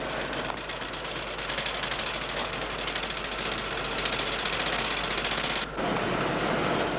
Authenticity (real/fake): real